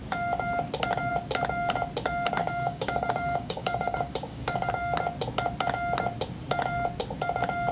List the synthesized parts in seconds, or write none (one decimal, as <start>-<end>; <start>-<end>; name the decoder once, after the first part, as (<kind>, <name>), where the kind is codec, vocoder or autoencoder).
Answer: 2.4-4.7 (codec, DAC)